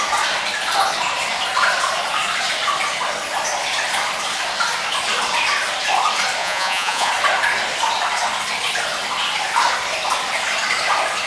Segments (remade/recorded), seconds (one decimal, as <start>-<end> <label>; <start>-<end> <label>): 0.0-6.4 recorded; 6.4-7.1 remade; 7.1-11.3 recorded